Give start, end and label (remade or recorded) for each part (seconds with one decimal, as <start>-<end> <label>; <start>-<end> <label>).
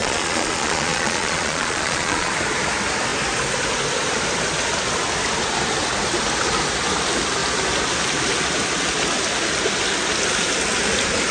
0.0-2.3 remade; 2.3-11.3 recorded